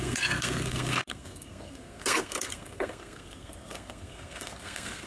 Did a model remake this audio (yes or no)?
yes